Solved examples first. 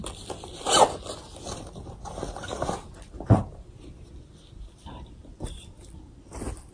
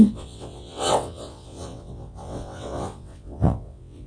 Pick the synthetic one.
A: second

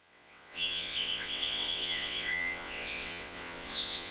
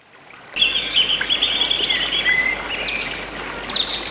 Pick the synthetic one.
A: first